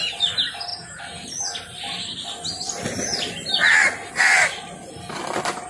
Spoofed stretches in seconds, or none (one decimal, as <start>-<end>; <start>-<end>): none